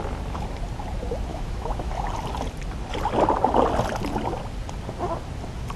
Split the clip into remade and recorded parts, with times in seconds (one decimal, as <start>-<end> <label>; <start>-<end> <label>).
0.0-1.3 recorded; 1.3-1.9 remade; 1.9-5.8 recorded